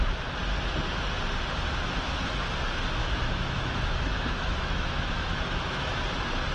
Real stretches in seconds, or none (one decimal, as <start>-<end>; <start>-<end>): 0.0-3.0; 6.0-6.5